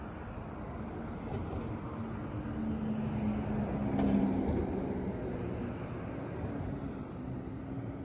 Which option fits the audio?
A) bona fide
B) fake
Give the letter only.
A